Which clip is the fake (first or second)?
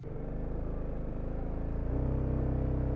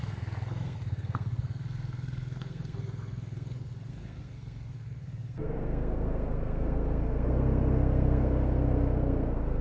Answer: second